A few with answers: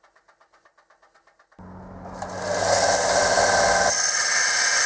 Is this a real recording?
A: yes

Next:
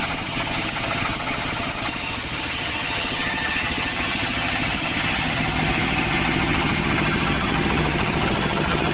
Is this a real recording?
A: no